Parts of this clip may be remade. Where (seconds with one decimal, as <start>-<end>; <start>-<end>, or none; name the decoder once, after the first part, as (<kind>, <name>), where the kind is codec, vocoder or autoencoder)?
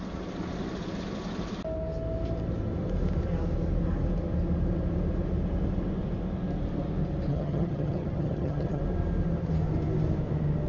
7.3-8.8 (vocoder, HiFi-GAN)